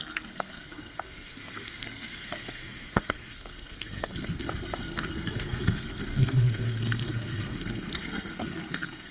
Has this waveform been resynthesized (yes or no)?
yes